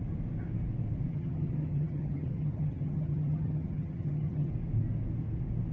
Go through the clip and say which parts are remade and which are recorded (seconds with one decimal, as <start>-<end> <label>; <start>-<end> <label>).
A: 0.0-1.1 recorded; 1.1-4.5 remade; 4.5-5.7 recorded